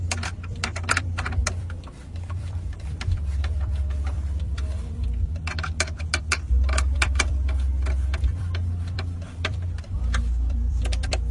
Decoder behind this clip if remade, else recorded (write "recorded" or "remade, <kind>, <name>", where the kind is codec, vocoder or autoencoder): remade, vocoder, BigVGAN v2